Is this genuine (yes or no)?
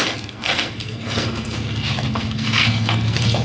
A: no